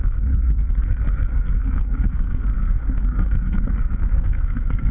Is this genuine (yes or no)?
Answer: no